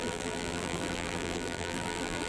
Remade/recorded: remade